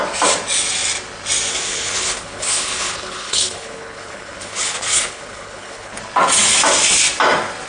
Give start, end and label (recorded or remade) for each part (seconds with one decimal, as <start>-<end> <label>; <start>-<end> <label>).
0.0-1.5 recorded; 1.5-6.0 remade; 6.0-7.7 recorded